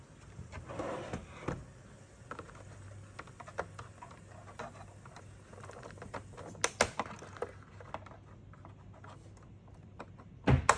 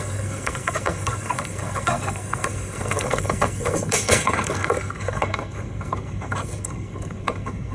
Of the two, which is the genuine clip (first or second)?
first